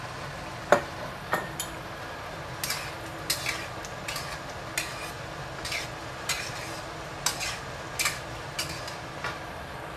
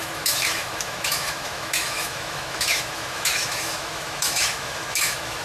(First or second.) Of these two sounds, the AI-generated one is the second